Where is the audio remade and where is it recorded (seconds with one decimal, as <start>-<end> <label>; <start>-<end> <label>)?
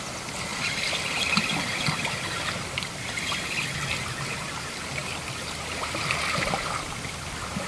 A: 0.0-7.7 recorded